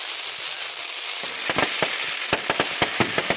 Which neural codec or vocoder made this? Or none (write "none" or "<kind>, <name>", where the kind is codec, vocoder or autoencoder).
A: none